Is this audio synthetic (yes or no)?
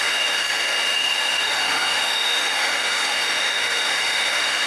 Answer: yes